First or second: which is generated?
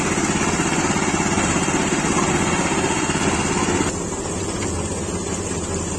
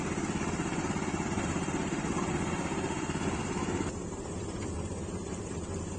second